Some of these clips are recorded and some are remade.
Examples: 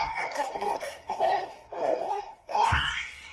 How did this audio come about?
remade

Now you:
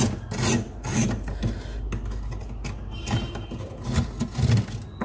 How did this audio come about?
recorded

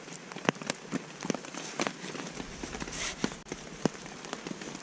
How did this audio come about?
recorded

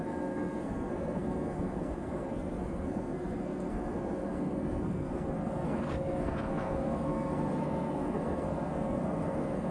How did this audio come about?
remade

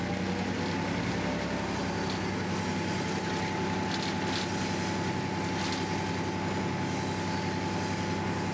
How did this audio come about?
recorded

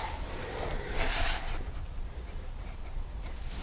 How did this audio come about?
remade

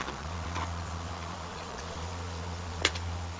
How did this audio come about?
remade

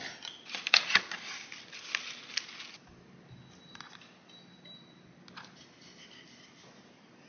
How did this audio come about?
recorded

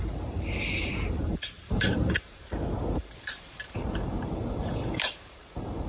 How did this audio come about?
remade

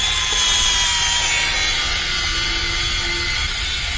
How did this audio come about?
recorded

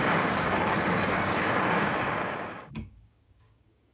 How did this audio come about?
remade